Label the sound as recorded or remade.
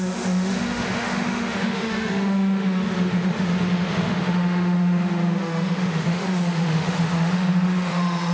remade